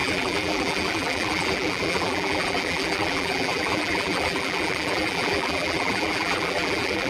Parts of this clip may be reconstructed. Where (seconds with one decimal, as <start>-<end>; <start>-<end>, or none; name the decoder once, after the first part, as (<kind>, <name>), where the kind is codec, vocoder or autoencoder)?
0.0-7.1 (vocoder, BigVGAN v2)